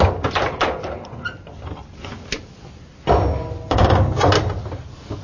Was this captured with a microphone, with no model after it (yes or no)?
yes